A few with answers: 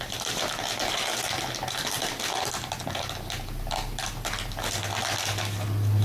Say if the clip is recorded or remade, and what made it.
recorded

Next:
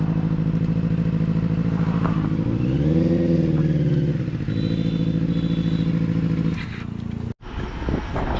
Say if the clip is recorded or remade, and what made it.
recorded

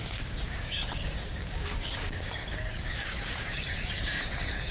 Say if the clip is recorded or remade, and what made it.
remade, codec, DAC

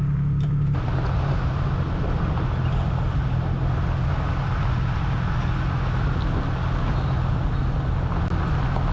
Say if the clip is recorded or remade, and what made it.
recorded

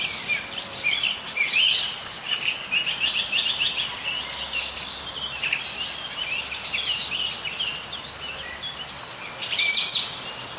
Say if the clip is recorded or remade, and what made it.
recorded